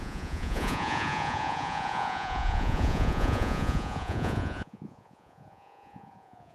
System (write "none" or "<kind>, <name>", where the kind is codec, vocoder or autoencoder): vocoder, Vocos